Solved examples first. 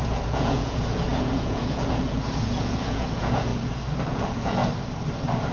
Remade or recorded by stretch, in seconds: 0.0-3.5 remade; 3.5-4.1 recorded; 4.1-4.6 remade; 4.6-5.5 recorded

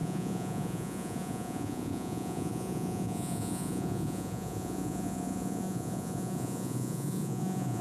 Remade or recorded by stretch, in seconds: 0.0-7.8 remade

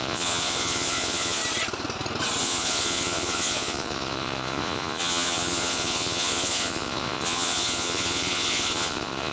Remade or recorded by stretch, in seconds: 0.0-1.4 remade; 1.4-2.4 recorded; 2.4-9.3 remade

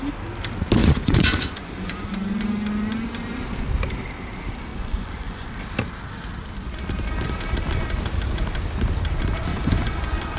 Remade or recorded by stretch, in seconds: 0.0-0.8 recorded; 0.8-2.1 remade; 2.1-4.7 recorded; 4.7-5.5 remade; 5.5-9.5 recorded; 9.5-10.4 remade

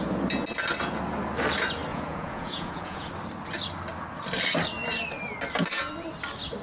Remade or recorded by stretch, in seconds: 0.0-1.9 recorded; 1.9-3.1 remade; 3.1-6.6 recorded

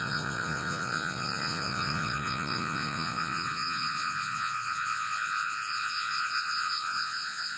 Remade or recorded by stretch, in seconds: 0.0-7.6 remade

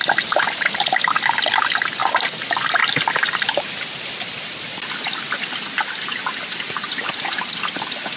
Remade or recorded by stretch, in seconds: 0.0-8.2 recorded